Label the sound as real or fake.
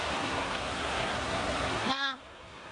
fake